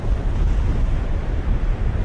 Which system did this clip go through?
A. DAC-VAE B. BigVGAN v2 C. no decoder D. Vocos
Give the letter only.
C